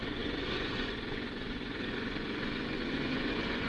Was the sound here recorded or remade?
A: remade